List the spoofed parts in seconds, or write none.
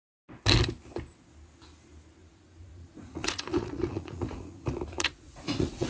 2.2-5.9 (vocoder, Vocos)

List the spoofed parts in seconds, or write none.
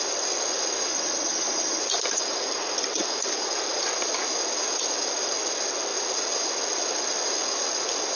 0.9-1.8 (vocoder, HiFi-GAN)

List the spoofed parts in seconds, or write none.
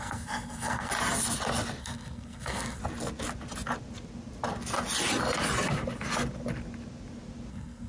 0.0-0.9 (codec, SNAC); 1.8-2.8; 7.5-7.9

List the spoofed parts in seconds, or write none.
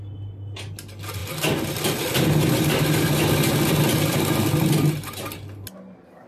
none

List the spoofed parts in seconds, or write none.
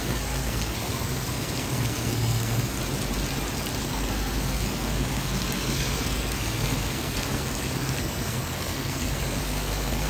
0.0-2.8 (codec, SNAC); 3.8-10.1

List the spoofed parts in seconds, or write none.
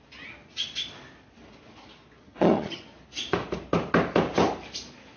2.2-2.8 (vocoder, HiFi-GAN)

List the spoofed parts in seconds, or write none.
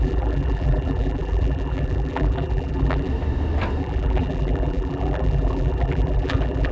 0.0-3.1 (vocoder, BigVGAN v2); 3.8-6.7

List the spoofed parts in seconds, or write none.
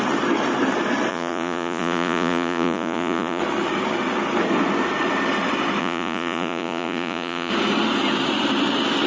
1.1-3.4 (vocoder, Vocos); 5.8-7.5